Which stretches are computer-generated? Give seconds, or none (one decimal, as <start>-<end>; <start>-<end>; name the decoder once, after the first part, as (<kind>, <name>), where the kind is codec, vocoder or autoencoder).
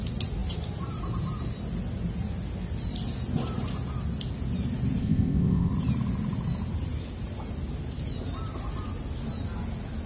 5.0-5.7 (codec, ZipCodec)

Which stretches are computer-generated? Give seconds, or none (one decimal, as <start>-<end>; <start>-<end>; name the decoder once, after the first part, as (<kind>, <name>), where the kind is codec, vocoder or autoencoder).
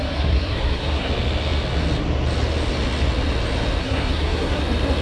0.0-1.1 (codec, SNAC); 3.8-4.6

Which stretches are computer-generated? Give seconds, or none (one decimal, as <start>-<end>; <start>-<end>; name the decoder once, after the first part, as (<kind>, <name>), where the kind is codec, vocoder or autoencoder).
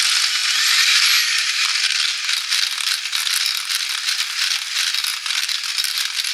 5.1-6.3 (vocoder, BigVGAN v2)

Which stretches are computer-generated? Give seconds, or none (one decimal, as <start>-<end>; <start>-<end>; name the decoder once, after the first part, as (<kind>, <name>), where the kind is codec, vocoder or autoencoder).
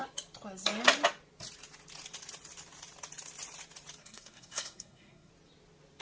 4.0-5.3 (codec, SNAC)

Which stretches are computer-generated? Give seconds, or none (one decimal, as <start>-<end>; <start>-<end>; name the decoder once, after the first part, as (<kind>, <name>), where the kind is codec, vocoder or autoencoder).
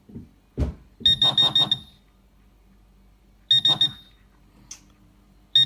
none